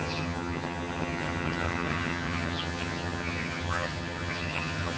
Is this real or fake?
fake